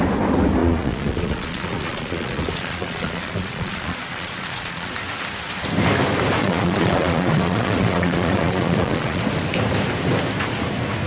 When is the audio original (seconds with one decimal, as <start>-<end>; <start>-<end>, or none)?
0.0-0.6; 4.9-6.4; 9.2-11.1